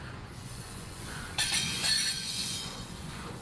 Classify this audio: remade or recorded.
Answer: remade